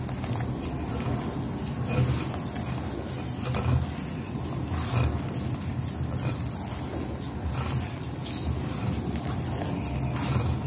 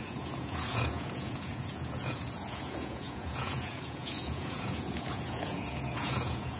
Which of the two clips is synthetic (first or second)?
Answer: second